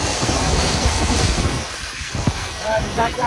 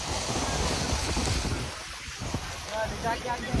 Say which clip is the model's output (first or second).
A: first